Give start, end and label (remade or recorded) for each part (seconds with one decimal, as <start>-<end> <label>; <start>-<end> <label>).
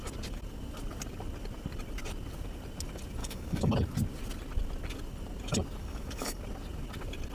0.0-3.2 recorded; 3.2-3.7 remade; 3.7-5.8 recorded; 5.8-6.4 remade; 6.4-7.3 recorded